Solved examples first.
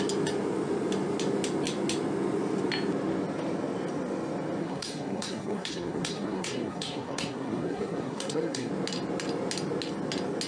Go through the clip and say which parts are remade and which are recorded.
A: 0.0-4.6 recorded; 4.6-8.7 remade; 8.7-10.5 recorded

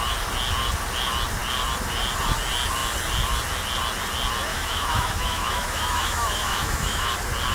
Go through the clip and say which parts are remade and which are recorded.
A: 0.0-4.5 recorded; 4.5-7.1 remade; 7.1-7.5 recorded

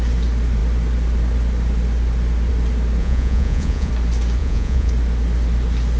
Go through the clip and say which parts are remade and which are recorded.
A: 0.0-3.0 recorded; 3.0-3.9 remade; 3.9-4.4 recorded; 4.4-4.9 remade; 4.9-6.0 recorded

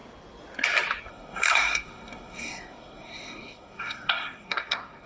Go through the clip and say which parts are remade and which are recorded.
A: 0.0-1.1 recorded; 1.1-5.1 remade